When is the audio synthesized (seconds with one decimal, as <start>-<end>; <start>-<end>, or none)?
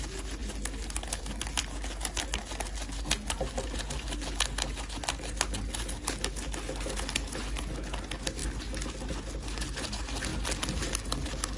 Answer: none